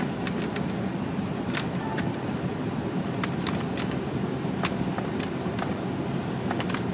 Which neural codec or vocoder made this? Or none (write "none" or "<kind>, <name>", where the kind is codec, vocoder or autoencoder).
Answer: none